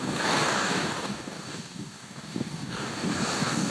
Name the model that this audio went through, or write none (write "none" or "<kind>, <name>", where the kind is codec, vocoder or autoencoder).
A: codec, DAC